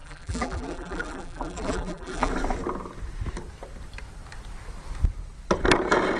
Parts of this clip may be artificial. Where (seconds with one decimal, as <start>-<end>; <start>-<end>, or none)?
0.0-2.3